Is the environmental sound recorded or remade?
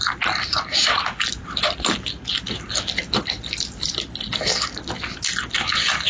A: recorded